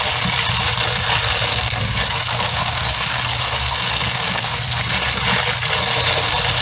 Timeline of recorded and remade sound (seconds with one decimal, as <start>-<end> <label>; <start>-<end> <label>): 0.0-1.5 recorded; 1.5-5.2 remade; 5.2-6.6 recorded